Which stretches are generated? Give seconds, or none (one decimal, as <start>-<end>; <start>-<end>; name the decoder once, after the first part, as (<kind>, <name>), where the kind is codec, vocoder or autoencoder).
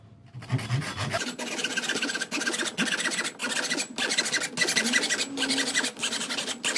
none